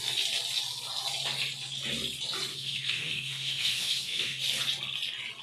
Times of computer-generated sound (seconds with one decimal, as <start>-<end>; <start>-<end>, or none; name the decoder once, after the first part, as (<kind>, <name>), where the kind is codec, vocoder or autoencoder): 2.5-4.4 (autoencoder, DAC-VAE)